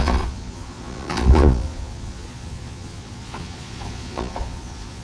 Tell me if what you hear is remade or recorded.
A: remade